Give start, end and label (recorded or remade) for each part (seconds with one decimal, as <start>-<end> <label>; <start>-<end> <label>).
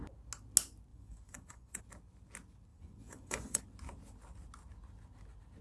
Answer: 0.0-0.9 recorded; 0.9-1.8 remade; 1.8-2.7 recorded; 2.7-3.6 remade; 3.6-5.6 recorded